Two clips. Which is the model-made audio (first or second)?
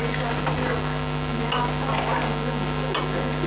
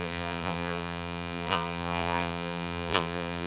second